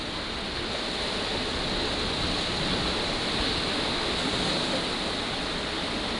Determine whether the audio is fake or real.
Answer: real